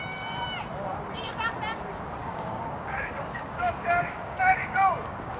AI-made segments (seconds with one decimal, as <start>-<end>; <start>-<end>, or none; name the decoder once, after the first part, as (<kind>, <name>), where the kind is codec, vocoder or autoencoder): 2.2-5.4 (codec, DAC)